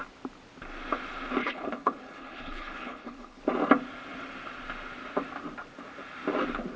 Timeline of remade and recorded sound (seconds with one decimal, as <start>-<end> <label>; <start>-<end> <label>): 0.0-1.4 recorded; 1.4-3.4 remade; 3.4-6.8 recorded